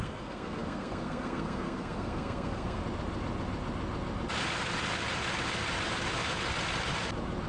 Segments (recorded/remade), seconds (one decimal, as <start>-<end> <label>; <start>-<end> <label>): 0.0-2.8 remade; 2.8-7.5 recorded